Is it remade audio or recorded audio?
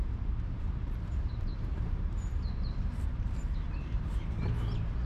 remade